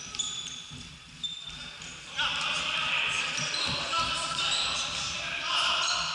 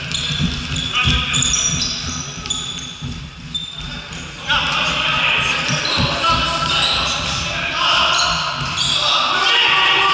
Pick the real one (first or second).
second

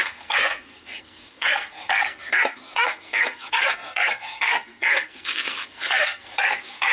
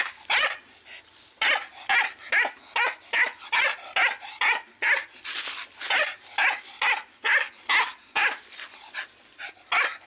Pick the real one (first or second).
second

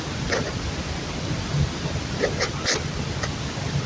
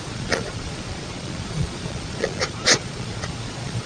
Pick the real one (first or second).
first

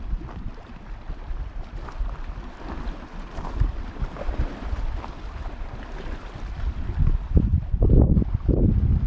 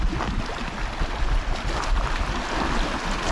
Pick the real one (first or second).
second